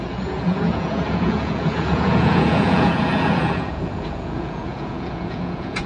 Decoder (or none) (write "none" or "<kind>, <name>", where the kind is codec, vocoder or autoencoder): vocoder, Vocos